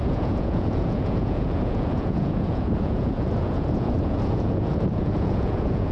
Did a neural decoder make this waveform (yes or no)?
yes